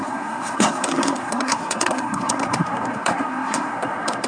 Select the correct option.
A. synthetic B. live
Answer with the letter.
A